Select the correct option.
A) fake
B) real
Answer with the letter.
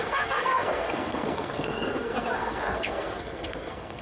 A